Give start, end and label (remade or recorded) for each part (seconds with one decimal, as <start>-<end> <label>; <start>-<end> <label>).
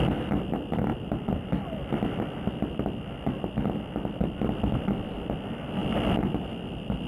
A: 0.0-0.9 recorded; 0.9-1.5 remade; 1.5-7.1 recorded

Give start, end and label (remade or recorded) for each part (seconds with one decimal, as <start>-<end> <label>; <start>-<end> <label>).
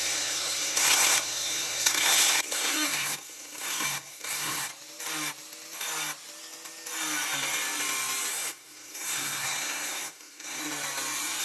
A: 0.0-4.7 remade; 4.7-8.3 recorded; 8.3-10.6 remade; 10.6-11.4 recorded